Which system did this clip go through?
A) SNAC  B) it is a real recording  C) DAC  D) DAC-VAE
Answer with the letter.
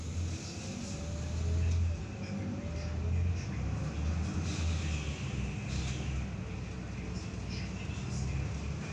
B